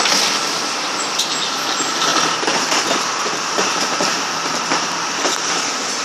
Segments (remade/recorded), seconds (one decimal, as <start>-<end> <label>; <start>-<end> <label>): 0.0-1.2 recorded; 1.2-2.1 remade; 2.1-3.0 recorded; 3.0-6.0 remade